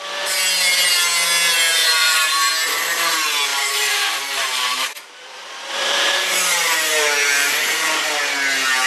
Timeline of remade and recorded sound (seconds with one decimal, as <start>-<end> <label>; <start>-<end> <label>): 0.0-1.7 recorded; 1.7-2.5 remade; 2.5-3.5 recorded; 3.5-8.2 remade; 8.2-8.9 recorded